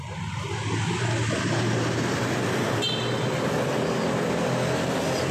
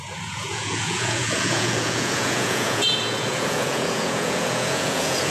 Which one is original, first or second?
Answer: first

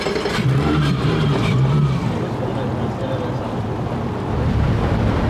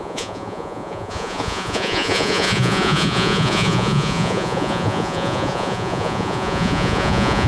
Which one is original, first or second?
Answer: first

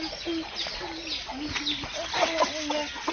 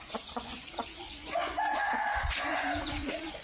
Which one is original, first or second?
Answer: first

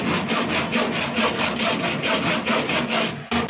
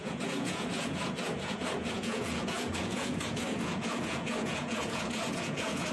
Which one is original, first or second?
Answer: first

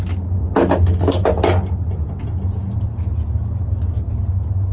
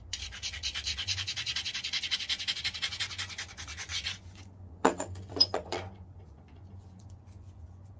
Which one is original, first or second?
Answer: first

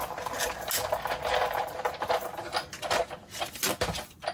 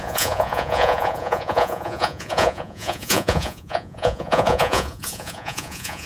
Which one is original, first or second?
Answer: first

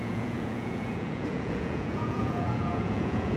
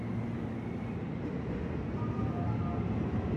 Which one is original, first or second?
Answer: second